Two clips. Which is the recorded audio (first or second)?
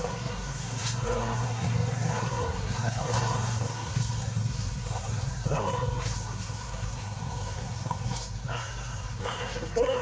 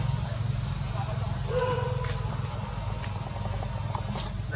second